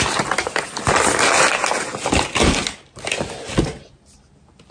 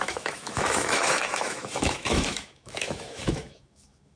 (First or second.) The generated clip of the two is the second